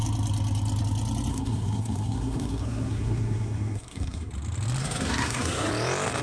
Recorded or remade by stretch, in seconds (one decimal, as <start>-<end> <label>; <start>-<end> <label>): 0.0-1.3 recorded; 1.3-4.3 remade; 4.3-4.8 recorded; 4.8-5.7 remade; 5.7-6.2 recorded